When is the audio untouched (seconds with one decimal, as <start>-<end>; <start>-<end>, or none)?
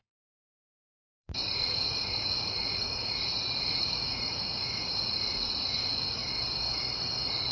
6.2-7.5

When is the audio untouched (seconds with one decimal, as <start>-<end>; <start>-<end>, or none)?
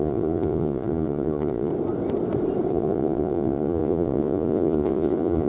1.7-2.7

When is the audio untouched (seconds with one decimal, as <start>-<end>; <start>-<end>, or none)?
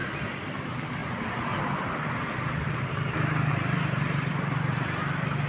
0.0-5.5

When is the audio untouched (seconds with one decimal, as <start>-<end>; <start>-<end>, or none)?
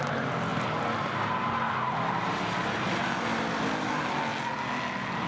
0.0-5.3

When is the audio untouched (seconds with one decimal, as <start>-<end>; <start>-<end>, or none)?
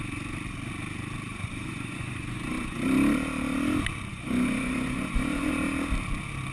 0.0-1.3; 2.8-4.1; 5.5-6.5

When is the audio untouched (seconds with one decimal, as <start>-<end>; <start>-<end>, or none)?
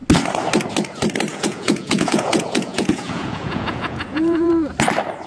0.0-1.3; 4.5-5.3